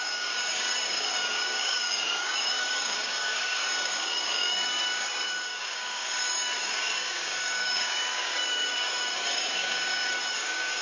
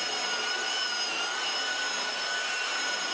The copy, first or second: first